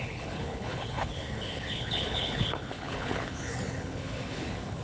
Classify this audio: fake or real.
fake